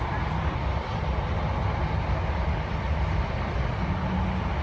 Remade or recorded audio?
recorded